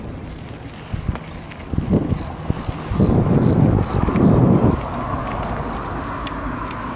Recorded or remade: recorded